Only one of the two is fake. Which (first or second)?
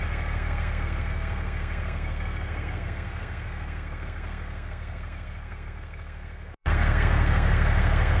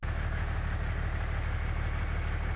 first